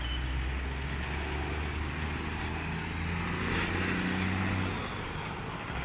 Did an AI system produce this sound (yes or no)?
no